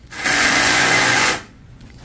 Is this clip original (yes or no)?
no